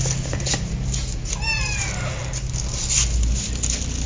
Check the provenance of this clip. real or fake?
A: real